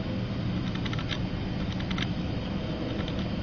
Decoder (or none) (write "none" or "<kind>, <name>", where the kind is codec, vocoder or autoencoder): none